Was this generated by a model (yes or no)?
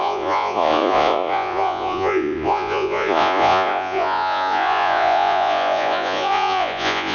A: yes